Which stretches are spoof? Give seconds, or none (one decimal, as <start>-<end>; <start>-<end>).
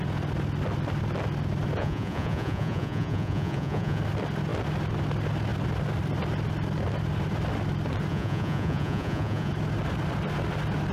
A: 1.8-4.0; 8.1-9.5